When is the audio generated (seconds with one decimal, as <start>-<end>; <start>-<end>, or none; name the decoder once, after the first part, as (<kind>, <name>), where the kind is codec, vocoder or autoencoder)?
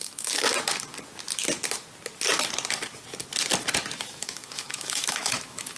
0.0-0.5 (autoencoder, DAC-VAE); 4.0-5.8